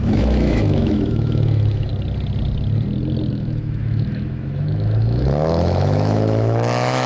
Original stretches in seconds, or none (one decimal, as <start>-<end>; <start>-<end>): 1.9-3.3